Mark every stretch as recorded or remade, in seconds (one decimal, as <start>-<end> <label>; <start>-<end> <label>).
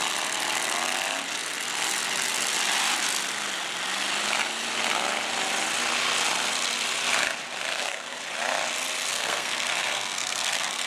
0.0-7.7 recorded; 7.7-8.2 remade; 8.2-9.1 recorded; 9.1-10.9 remade